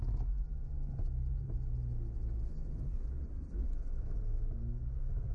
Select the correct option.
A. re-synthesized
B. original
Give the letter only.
B